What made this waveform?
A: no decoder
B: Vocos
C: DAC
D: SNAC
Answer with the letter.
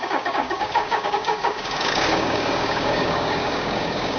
C